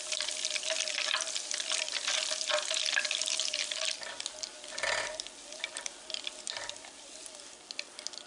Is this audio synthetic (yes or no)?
no